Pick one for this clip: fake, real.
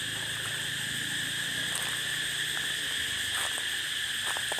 real